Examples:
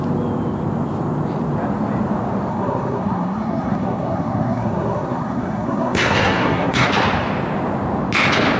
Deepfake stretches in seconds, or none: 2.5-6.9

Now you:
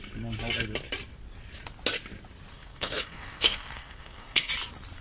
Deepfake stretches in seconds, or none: 2.5-4.5

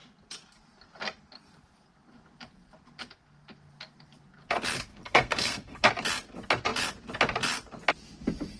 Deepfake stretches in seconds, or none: 4.9-5.9

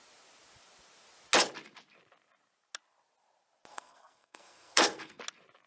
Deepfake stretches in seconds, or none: 3.7-5.2

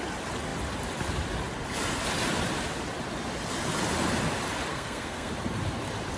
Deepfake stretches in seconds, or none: 4.7-5.3

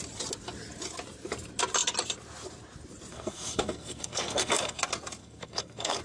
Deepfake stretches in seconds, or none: 3.1-4.8; 5.2-6.0

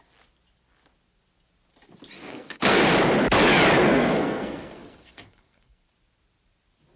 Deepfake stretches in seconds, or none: 2.2-2.8; 3.8-5.8

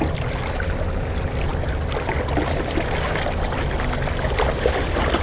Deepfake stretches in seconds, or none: none